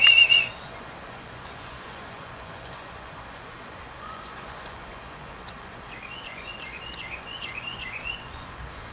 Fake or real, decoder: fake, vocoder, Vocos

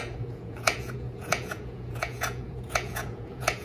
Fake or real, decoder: fake, vocoder, Vocos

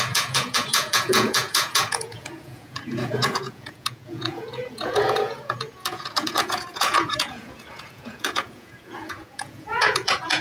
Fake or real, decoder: fake, vocoder, Vocos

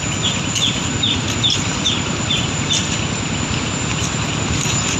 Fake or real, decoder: real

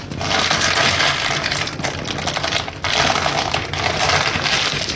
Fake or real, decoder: real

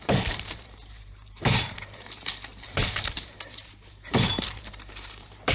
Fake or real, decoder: fake, vocoder, BigVGAN v2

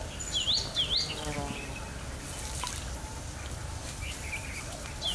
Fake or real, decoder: real